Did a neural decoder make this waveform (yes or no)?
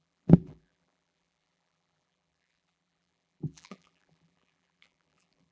yes